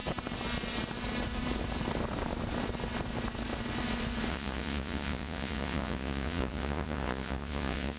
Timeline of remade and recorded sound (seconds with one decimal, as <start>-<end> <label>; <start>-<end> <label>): 0.0-4.3 recorded; 4.3-8.0 remade